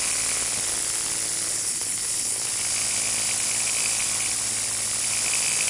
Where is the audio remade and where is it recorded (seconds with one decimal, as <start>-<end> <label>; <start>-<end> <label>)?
0.0-1.5 recorded; 1.5-2.5 remade; 2.5-5.7 recorded